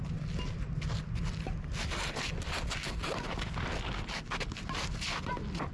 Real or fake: real